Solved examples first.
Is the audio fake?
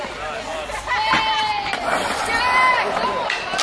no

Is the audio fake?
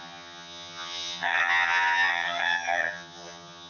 yes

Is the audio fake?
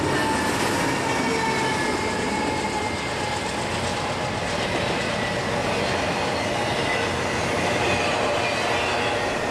no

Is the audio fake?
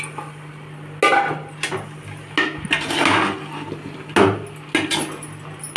no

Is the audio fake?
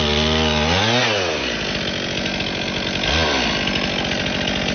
no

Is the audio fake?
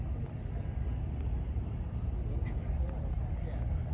no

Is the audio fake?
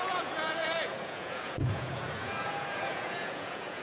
yes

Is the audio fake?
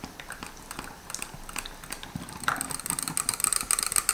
no